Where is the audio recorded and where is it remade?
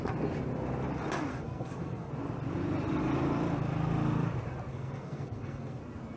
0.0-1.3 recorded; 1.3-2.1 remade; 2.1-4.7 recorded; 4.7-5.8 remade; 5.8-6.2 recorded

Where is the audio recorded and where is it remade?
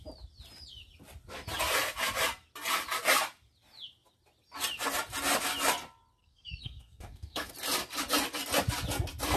0.0-6.2 recorded; 6.2-7.5 remade; 7.5-9.4 recorded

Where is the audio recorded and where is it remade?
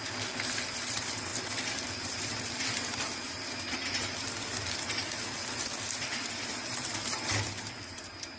0.0-8.4 recorded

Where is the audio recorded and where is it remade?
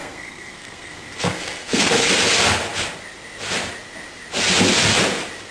0.0-2.1 remade; 2.1-5.5 recorded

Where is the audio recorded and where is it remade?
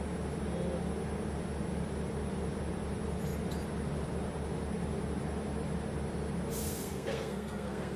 0.0-6.6 recorded; 6.6-8.0 remade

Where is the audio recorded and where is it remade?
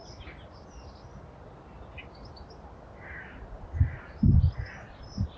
0.0-5.4 recorded